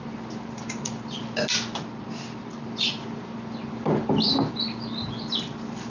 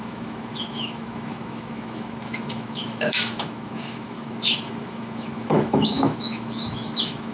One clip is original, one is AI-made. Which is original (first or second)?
first